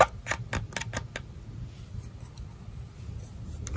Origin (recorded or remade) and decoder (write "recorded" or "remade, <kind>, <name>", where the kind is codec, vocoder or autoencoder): recorded